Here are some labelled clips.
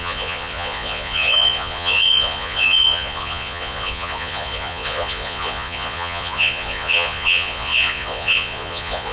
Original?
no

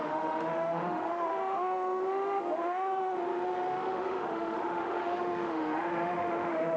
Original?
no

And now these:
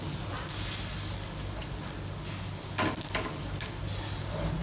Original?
yes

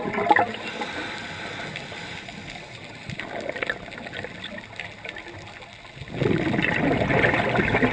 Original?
yes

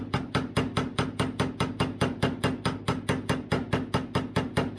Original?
yes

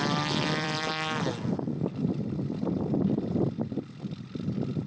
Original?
no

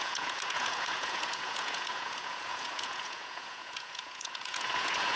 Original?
no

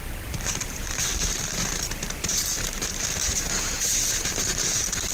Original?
no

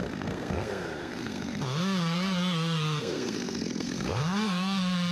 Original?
no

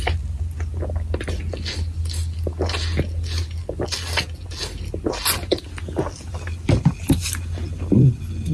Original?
yes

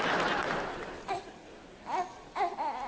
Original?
yes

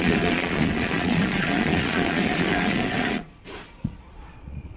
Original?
no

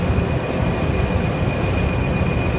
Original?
yes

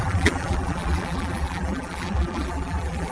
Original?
no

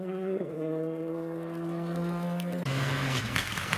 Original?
no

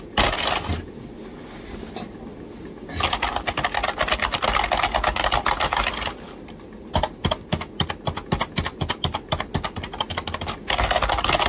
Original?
yes